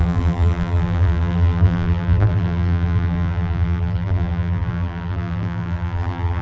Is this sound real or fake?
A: fake